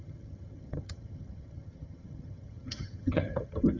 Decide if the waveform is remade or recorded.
remade